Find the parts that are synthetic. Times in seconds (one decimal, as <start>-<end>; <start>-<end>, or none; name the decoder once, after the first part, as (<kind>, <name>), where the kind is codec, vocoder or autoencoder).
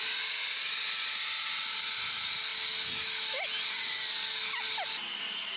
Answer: none